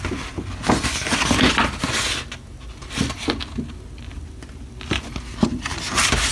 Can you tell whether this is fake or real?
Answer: real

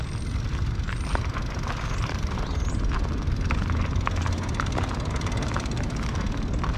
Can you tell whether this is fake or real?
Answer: real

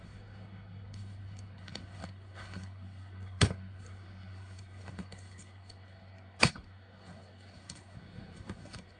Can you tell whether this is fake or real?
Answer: fake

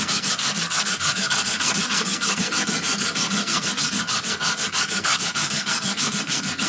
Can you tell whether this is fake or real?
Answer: fake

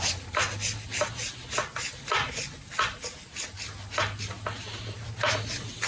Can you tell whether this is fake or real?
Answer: real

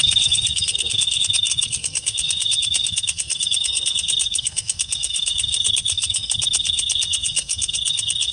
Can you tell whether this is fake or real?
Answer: fake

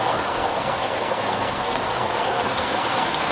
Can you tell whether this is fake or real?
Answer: fake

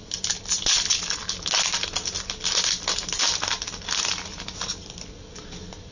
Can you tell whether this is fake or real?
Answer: real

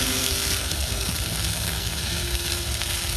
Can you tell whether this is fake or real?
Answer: fake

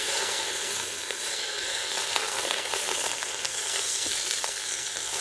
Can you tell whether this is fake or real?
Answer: fake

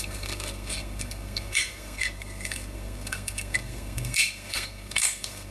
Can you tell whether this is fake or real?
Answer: fake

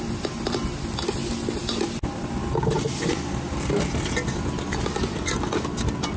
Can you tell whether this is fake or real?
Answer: real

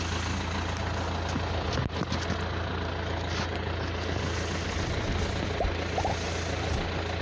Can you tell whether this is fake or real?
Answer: real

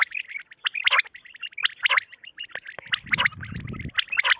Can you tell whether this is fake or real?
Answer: real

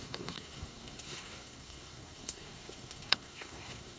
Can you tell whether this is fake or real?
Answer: fake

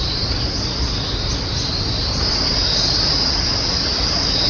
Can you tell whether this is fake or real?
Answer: real